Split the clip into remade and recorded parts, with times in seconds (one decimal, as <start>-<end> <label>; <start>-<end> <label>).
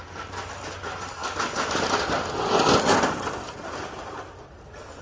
0.0-5.0 recorded